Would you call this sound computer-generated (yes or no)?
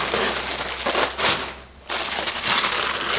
no